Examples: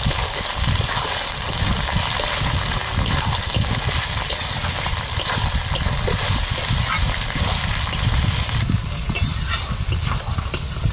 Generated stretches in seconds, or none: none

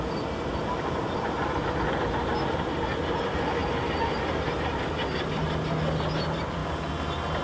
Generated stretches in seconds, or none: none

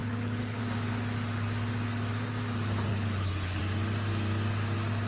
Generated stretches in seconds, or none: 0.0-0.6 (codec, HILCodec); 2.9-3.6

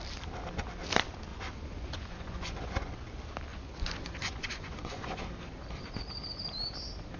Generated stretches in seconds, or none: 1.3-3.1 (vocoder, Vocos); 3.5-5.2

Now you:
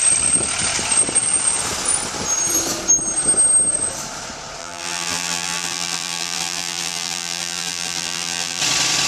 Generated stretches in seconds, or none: 4.6-8.6 (vocoder, BigVGAN v2)